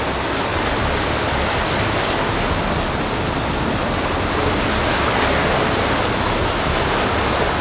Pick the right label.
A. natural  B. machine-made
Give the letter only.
A